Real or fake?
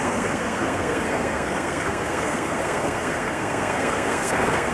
fake